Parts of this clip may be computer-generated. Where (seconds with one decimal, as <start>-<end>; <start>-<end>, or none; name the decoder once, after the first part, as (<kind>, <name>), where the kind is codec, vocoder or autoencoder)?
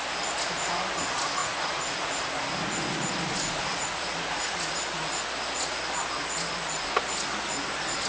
1.4-2.1 (vocoder, Vocos); 3.7-4.7